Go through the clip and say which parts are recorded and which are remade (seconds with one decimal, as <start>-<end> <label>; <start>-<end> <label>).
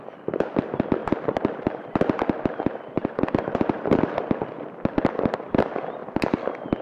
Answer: 0.0-1.0 recorded; 1.0-2.0 remade; 2.0-3.0 recorded; 3.0-4.1 remade; 4.1-6.8 recorded